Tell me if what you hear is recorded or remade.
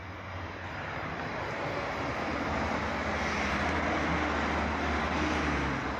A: recorded